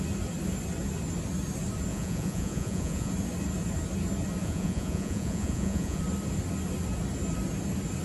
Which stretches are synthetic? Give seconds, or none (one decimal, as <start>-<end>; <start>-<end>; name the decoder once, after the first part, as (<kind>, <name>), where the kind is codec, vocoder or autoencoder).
1.9-3.1 (vocoder, Vocos); 4.4-6.0